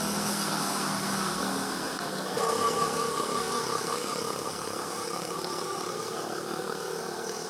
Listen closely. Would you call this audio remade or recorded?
remade